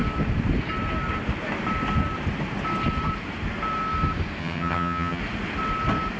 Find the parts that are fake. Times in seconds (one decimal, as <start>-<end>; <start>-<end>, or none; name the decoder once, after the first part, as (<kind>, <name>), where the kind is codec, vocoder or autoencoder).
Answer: 4.4-5.2 (vocoder, HiFi-GAN)